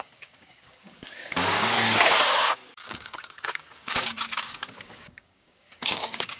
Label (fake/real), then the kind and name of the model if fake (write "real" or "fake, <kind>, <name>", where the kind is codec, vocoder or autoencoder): fake, codec, DAC